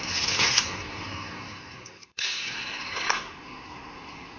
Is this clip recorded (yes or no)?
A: no